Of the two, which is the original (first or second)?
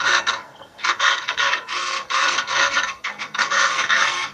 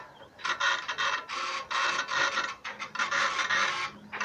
second